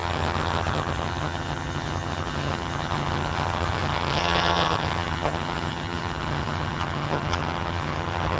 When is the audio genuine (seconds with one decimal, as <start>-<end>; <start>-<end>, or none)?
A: none